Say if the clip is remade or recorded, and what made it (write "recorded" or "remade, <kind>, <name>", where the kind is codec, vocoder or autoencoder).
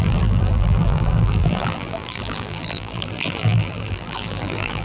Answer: remade, vocoder, BigVGAN v2